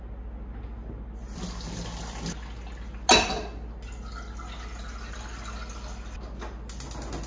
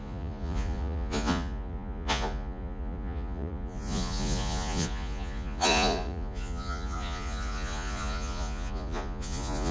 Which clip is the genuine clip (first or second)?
first